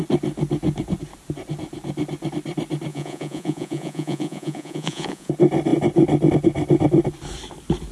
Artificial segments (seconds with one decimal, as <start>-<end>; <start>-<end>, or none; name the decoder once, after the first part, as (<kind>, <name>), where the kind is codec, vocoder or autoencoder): 2.9-5.3 (vocoder, Vocos)